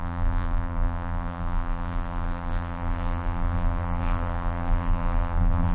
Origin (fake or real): fake